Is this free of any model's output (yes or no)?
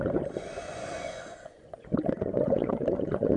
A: no